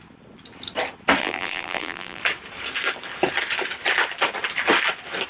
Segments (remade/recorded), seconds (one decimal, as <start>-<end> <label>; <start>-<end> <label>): 0.0-1.2 recorded; 1.2-2.2 remade; 2.2-5.3 recorded